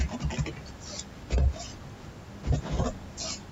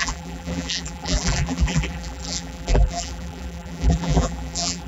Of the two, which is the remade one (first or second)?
second